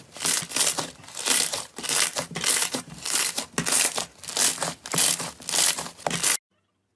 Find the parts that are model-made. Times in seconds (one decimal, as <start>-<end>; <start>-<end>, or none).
2.6-3.4